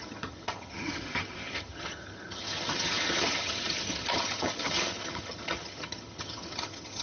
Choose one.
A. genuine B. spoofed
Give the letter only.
B